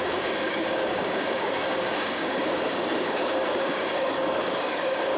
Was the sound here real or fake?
fake